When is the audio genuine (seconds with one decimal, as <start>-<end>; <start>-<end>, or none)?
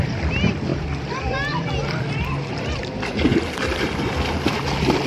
0.0-5.1